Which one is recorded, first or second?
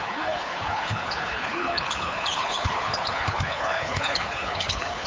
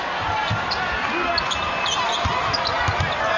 second